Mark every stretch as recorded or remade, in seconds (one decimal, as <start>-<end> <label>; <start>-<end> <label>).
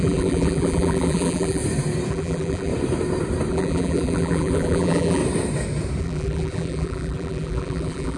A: 0.0-1.6 remade; 1.6-2.1 recorded; 2.1-2.7 remade; 2.7-3.5 recorded; 3.5-5.2 remade; 5.2-6.0 recorded; 6.0-8.2 remade